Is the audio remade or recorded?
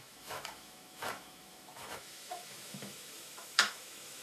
remade